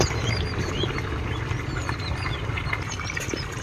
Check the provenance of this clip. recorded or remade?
recorded